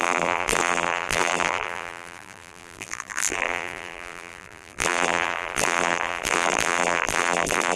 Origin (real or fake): fake